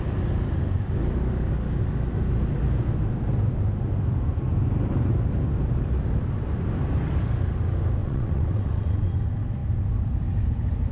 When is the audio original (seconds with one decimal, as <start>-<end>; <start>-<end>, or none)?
0.0-8.0; 9.1-10.9